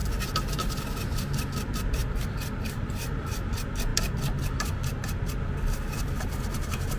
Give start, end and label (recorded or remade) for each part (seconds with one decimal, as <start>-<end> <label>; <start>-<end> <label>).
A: 0.0-2.0 recorded; 2.0-3.0 remade; 3.0-3.9 recorded; 3.9-5.5 remade; 5.5-7.0 recorded